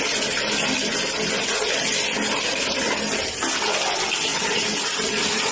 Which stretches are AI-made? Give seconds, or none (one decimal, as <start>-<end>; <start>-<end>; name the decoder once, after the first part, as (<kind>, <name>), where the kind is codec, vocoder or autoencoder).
4.3-5.5 (vocoder, BigVGAN v2)